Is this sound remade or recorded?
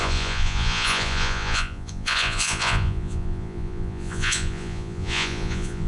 remade